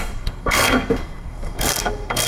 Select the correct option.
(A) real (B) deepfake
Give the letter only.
B